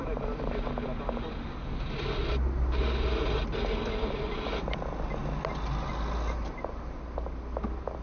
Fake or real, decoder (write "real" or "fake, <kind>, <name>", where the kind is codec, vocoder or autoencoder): real